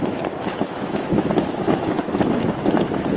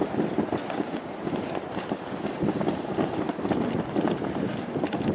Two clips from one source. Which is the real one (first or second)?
second